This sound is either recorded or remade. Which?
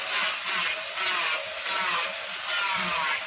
recorded